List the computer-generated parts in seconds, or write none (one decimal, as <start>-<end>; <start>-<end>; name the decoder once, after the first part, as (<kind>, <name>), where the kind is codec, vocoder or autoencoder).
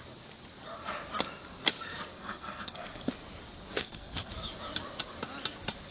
2.1-3.1 (codec, SNAC); 3.8-4.3